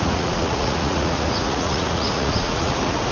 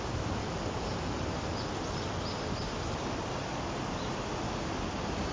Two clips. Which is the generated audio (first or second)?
first